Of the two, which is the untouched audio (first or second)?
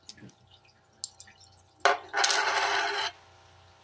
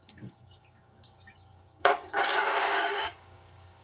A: first